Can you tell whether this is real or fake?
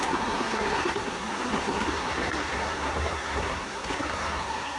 fake